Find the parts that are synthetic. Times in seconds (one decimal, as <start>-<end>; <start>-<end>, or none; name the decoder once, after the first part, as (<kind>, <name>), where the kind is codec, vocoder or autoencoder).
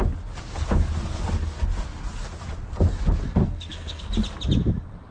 3.4-4.0 (codec, SNAC)